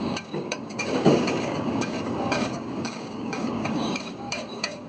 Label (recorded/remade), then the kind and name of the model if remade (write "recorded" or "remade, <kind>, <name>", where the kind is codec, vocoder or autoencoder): remade, codec, DAC